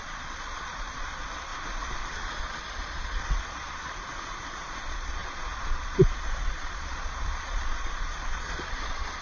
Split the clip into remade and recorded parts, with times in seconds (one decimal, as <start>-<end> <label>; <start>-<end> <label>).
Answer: 0.0-1.5 remade; 1.5-2.4 recorded; 2.4-3.9 remade; 3.9-4.8 recorded; 4.8-9.2 remade